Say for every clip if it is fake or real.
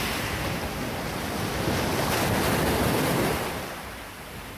real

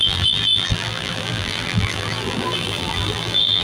fake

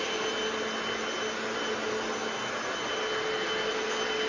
real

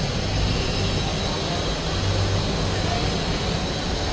real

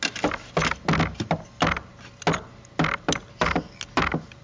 real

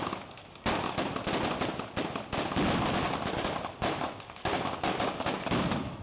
real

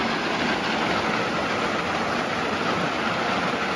real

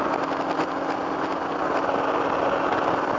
real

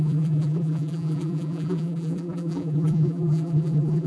fake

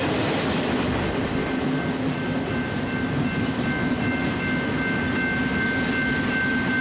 real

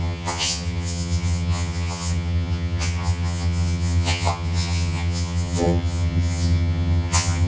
fake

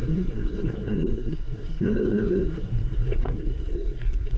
fake